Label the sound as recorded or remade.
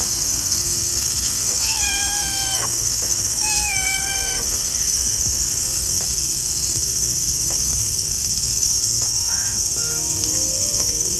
remade